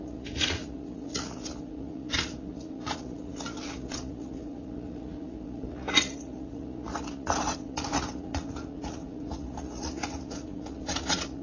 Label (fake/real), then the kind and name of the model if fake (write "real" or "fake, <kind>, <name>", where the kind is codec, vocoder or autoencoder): fake, vocoder, Vocos